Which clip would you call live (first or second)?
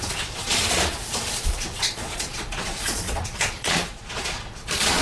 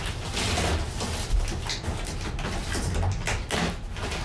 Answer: second